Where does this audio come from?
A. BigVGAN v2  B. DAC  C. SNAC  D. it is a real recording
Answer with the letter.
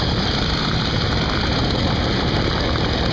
D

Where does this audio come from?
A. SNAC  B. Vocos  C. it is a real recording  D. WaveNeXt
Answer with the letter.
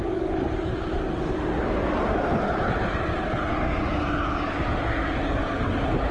C